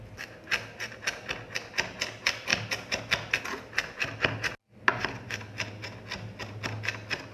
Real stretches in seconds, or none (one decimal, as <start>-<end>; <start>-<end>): 0.0-7.3